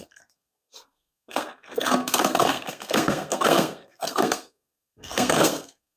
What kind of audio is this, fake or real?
fake